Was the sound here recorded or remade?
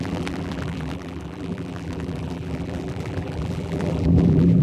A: remade